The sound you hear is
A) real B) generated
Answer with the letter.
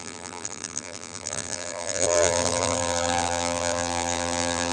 B